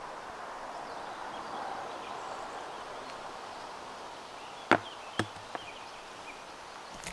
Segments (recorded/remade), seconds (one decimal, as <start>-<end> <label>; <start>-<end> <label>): 0.0-7.1 recorded